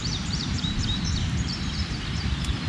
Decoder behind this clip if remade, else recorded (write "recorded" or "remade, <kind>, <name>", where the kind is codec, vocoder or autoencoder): remade, vocoder, BigVGAN v2